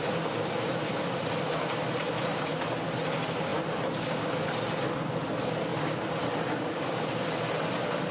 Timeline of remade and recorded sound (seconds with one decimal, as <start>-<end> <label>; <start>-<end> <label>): 0.0-2.6 remade; 2.6-8.1 recorded